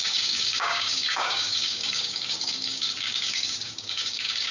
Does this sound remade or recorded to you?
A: remade